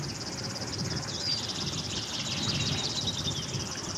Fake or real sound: fake